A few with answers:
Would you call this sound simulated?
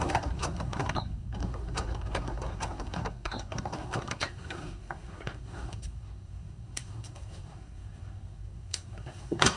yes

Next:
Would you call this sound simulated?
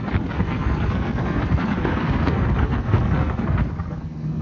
yes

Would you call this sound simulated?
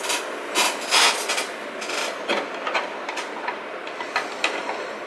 no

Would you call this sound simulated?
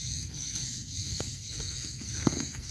yes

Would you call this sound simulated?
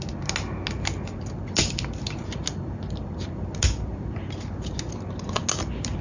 no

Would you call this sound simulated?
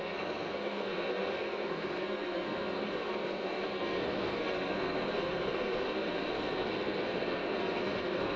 yes